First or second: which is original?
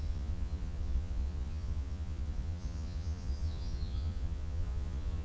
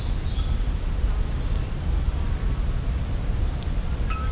second